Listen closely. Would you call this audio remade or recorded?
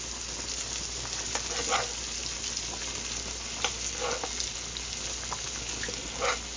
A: recorded